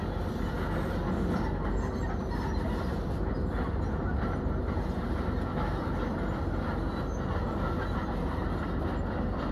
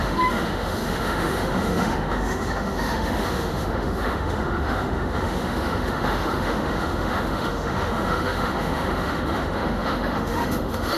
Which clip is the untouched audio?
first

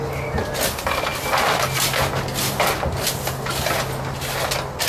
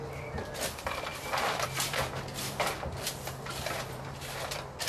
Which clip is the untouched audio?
first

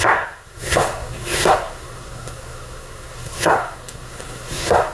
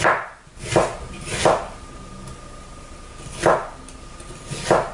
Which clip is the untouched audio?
second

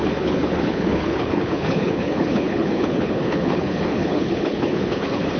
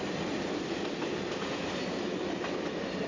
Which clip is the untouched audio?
second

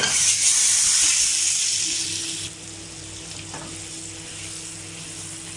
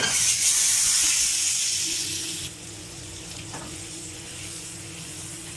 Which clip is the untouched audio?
first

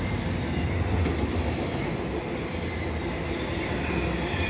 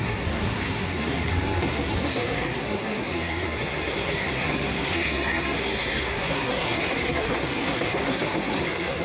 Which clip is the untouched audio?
first